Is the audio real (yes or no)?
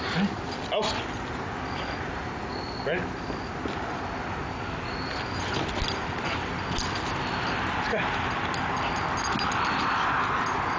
yes